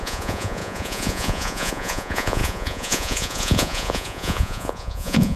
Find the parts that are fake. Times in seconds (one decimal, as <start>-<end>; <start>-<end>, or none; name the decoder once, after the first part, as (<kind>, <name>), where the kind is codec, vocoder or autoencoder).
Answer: 0.0-5.4 (vocoder, Vocos)

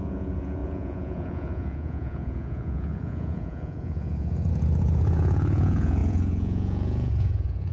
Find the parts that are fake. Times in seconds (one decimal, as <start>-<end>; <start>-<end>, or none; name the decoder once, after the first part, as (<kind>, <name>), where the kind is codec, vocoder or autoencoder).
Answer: 0.0-7.7 (vocoder, Vocos)